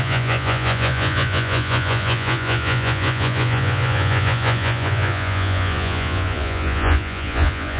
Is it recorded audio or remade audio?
remade